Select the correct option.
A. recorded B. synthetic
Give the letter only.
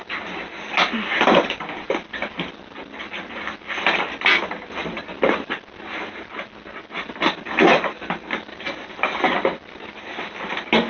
A